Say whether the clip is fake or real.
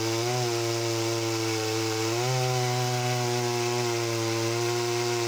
real